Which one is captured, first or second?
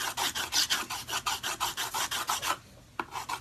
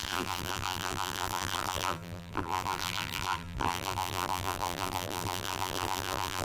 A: first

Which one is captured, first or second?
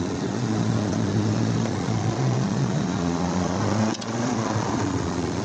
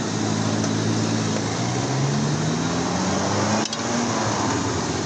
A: second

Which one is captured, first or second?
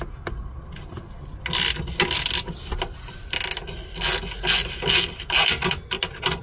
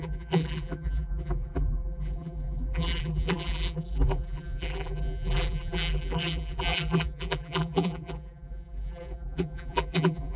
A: first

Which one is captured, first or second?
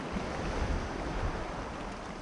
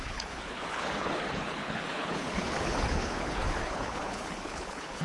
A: first